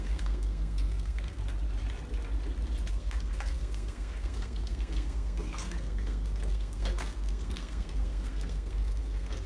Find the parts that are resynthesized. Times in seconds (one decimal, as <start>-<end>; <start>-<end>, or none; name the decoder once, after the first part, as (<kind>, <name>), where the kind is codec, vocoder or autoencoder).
0.0-1.4 (codec, SNAC); 2.9-9.5